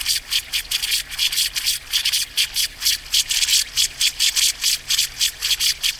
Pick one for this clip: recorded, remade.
recorded